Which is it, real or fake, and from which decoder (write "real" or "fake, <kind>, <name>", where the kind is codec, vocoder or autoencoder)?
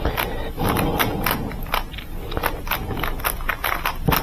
real